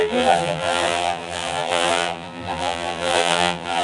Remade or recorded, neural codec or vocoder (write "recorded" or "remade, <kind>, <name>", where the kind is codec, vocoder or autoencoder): remade, vocoder, BigVGAN v2